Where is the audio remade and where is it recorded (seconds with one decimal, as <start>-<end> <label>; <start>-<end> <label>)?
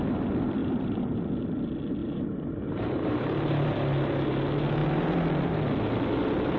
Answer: 0.0-0.6 recorded; 0.6-1.2 remade; 1.2-2.0 recorded; 2.0-3.7 remade; 3.7-6.6 recorded